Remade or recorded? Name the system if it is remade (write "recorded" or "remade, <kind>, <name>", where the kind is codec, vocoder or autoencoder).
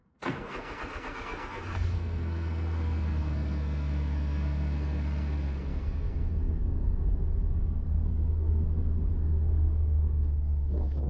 remade, codec, SNAC